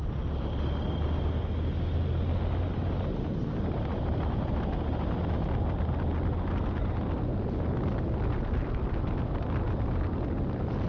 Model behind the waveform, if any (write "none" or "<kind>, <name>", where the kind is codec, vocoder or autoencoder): none